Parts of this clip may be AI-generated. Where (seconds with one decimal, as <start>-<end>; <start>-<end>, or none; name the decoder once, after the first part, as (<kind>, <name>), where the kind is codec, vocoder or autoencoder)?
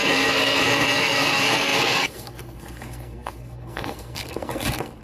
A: 0.0-5.0 (codec, SNAC)